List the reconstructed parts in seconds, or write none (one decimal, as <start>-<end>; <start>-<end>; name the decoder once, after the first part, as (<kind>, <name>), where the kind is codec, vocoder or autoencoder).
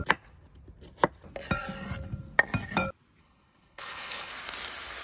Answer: 3.2-4.3 (codec, HILCodec)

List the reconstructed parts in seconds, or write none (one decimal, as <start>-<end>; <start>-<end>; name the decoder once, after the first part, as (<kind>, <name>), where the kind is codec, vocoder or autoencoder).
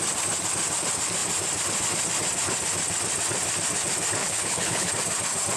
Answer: 4.2-4.9 (codec, HILCodec)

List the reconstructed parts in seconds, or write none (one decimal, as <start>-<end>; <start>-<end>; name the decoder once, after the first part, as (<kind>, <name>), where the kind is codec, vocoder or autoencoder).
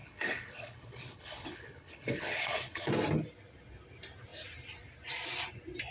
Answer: 0.0-2.9 (codec, HILCodec)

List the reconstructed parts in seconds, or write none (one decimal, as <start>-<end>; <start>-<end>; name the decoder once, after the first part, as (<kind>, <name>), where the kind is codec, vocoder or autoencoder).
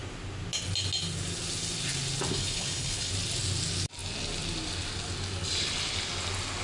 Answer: 2.3-3.1 (codec, HILCodec)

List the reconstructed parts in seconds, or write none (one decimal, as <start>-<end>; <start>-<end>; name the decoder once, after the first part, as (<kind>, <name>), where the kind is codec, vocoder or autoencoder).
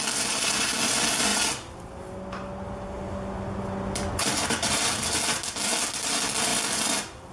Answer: none